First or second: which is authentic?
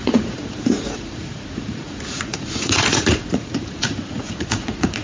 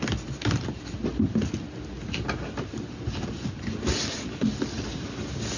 second